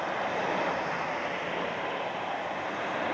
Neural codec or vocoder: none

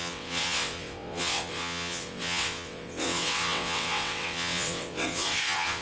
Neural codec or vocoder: vocoder, WaveNeXt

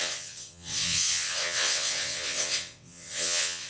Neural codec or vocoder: vocoder, WaveNeXt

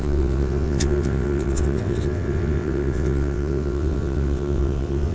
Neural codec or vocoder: vocoder, WaveNeXt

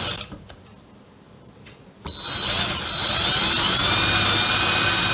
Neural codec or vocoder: none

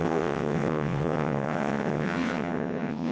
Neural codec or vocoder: vocoder, WaveNeXt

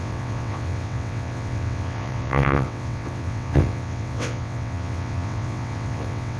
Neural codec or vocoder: vocoder, WaveNeXt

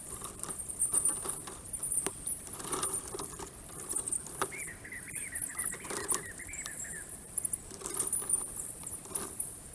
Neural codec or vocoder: none